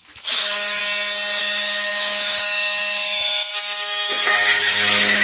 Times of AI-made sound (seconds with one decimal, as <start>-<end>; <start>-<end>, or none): 0.0-0.8; 1.4-5.2

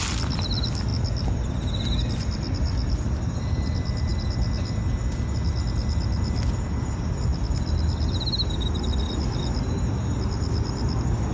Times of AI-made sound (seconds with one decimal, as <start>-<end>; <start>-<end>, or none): none

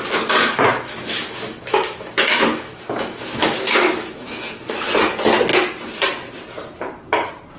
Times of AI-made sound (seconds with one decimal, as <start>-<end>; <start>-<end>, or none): 0.7-4.5